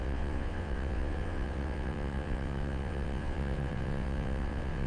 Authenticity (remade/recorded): remade